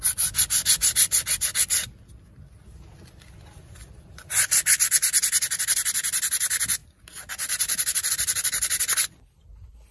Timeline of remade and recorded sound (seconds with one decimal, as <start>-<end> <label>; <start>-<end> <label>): 0.0-9.9 recorded